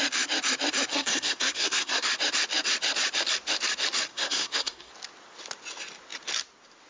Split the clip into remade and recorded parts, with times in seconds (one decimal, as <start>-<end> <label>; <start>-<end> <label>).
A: 0.0-0.9 recorded; 0.9-2.1 remade; 2.1-4.1 recorded; 4.1-4.9 remade; 4.9-6.9 recorded